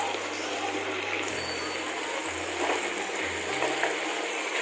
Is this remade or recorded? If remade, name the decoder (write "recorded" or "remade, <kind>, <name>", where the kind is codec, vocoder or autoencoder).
remade, vocoder, BigVGAN v2